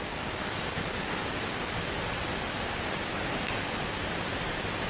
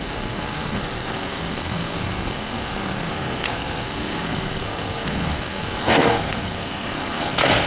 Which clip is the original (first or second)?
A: first